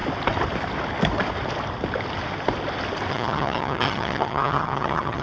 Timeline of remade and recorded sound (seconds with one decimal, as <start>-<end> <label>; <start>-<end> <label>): 0.0-3.1 recorded; 3.1-5.2 remade